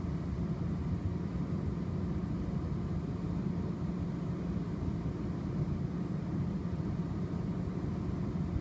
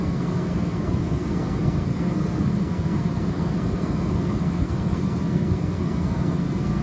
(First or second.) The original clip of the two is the first